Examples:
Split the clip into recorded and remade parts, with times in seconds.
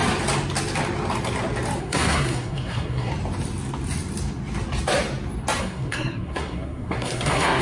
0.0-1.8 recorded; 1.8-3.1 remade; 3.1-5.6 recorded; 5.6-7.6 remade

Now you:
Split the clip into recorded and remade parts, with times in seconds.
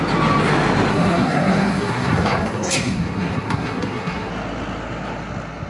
0.0-0.9 recorded; 0.9-4.3 remade; 4.3-5.7 recorded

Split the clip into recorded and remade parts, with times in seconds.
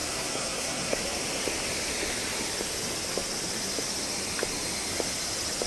0.0-1.0 remade; 1.0-5.7 recorded